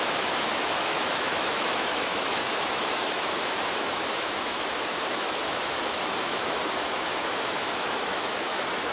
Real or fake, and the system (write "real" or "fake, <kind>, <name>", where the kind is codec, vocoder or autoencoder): fake, autoencoder, DAC-VAE